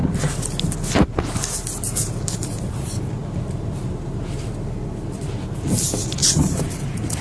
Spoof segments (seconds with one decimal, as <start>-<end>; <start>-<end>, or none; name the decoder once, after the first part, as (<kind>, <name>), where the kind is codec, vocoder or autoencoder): 6.2-7.2 (vocoder, BigVGAN v2)